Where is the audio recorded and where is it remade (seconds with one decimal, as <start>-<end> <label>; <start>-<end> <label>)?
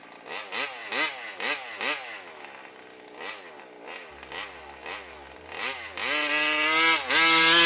0.0-7.7 recorded